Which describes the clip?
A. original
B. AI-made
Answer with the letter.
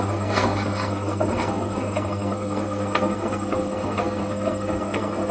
B